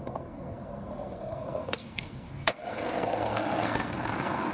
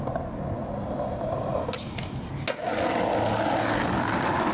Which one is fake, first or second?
first